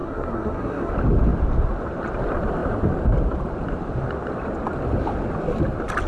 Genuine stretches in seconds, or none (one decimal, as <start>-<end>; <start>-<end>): 0.9-6.1

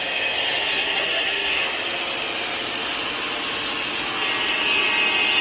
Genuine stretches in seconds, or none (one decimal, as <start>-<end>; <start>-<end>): 0.0-0.6; 1.6-5.4

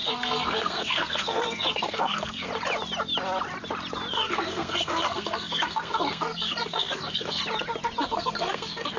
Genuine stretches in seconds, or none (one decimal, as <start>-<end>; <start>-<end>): 2.5-4.1; 7.4-8.0

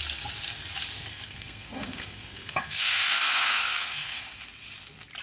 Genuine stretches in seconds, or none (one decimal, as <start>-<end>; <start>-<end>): 0.0-1.1; 4.2-5.2